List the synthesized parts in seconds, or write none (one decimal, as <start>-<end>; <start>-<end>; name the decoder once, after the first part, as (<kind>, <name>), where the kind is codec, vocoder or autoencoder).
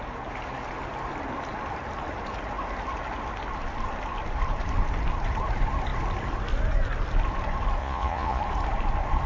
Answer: 7.8-8.4 (vocoder, Vocos)